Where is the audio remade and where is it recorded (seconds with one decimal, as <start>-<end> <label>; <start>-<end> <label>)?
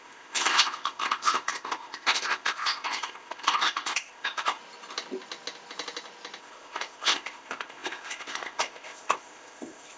0.0-4.6 remade; 4.6-6.4 recorded; 6.4-10.0 remade